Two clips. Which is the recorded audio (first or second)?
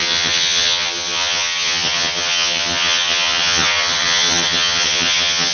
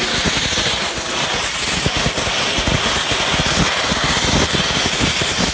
second